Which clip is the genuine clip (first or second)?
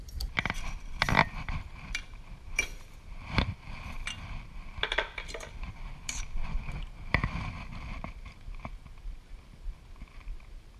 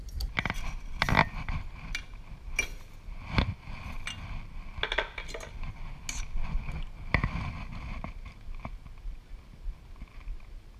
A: second